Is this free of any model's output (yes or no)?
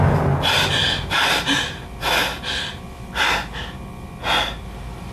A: yes